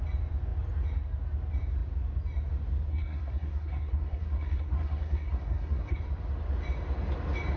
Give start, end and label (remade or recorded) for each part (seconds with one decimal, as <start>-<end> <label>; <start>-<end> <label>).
0.0-2.9 recorded; 2.9-6.0 remade; 6.0-7.6 recorded